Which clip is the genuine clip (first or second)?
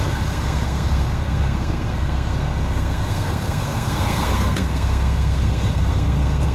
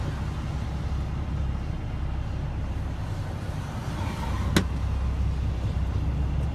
second